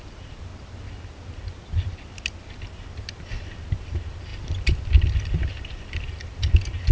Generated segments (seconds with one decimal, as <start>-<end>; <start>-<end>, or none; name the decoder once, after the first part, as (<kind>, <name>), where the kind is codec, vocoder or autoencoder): 4.3-6.0 (vocoder, BigVGAN v2)